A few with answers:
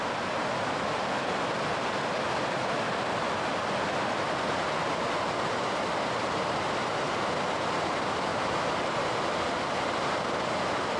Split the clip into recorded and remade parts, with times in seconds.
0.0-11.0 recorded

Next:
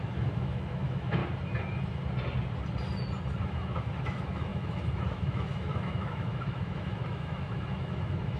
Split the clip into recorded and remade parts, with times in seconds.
0.0-1.2 remade; 1.2-3.4 recorded; 3.4-8.4 remade

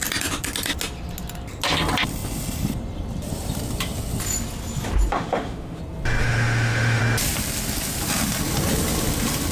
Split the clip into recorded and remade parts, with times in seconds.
0.0-5.1 recorded; 5.1-5.8 remade; 5.8-6.2 recorded; 6.2-7.0 remade; 7.0-9.5 recorded

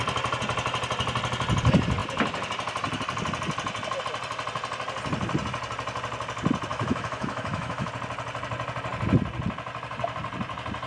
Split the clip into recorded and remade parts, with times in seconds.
0.0-6.7 recorded; 6.7-7.9 remade; 7.9-10.9 recorded